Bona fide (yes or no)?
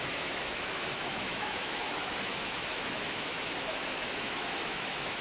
no